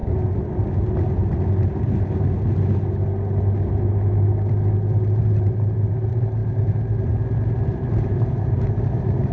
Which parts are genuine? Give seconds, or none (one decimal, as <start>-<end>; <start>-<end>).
0.0-5.2; 6.4-7.7

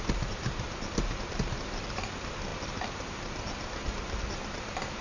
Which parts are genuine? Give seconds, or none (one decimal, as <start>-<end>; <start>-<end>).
none

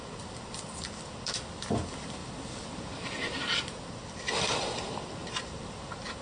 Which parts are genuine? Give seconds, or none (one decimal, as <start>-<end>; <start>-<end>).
0.0-2.2; 4.0-5.2

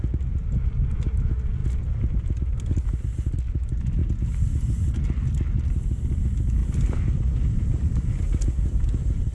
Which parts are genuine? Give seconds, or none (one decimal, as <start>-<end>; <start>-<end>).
0.0-6.6; 8.4-9.3